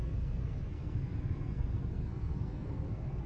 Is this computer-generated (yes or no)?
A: yes